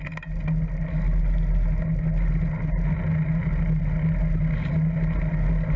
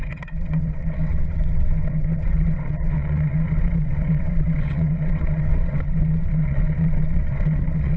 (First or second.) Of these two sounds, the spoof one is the second